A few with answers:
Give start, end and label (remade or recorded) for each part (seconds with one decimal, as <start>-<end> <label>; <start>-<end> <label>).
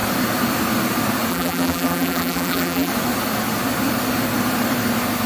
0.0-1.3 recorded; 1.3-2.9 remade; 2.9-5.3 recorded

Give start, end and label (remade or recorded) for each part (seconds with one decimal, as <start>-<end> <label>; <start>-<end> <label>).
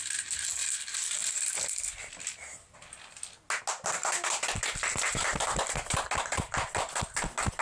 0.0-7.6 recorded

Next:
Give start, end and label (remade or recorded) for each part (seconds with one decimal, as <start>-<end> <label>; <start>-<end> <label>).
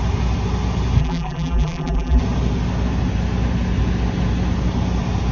0.0-1.0 recorded; 1.0-2.2 remade; 2.2-5.3 recorded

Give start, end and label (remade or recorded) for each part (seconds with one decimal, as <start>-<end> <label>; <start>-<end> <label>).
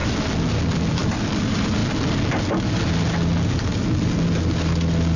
0.0-5.2 recorded